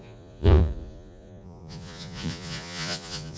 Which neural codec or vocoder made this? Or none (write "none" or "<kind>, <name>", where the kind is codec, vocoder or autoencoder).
vocoder, Vocos